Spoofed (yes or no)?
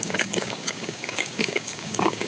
yes